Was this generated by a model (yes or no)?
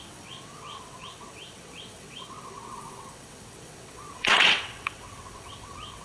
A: yes